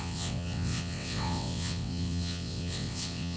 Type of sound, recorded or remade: remade